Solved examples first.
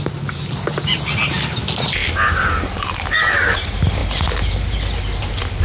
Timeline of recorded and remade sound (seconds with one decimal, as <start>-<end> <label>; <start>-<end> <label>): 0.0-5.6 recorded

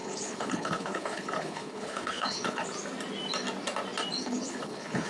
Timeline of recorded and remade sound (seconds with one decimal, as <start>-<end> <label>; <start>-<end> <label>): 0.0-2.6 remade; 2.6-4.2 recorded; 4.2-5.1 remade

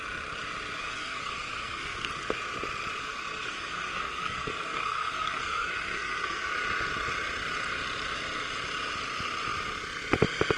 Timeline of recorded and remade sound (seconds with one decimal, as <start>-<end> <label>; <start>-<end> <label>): 0.0-0.8 recorded; 0.8-2.1 remade; 2.1-3.0 recorded; 3.0-6.5 remade; 6.5-10.6 recorded

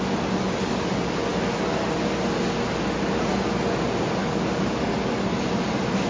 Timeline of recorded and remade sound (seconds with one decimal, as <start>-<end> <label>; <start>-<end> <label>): 0.0-4.2 recorded; 4.2-4.9 remade; 4.9-6.1 recorded

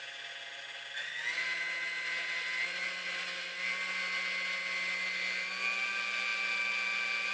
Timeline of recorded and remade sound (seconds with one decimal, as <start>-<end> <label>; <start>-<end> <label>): 0.0-7.3 recorded